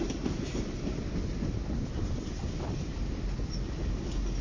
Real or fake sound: real